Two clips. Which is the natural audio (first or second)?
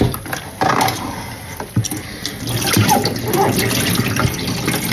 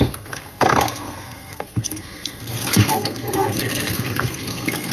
first